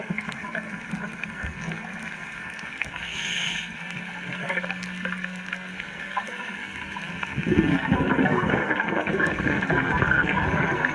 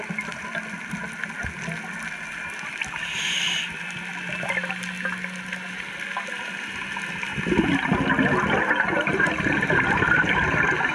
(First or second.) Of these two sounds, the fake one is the first